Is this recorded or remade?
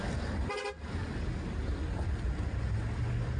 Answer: recorded